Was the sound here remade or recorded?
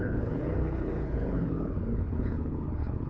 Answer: remade